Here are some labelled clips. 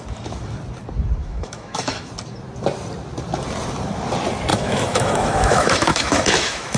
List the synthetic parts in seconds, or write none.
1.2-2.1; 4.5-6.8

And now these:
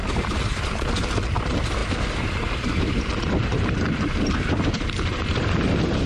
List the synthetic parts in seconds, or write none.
0.0-6.1

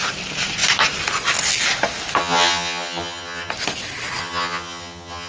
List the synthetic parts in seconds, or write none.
2.2-3.5; 4.2-5.3

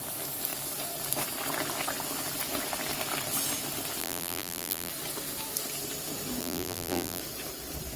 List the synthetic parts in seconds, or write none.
4.0-4.9; 6.4-7.2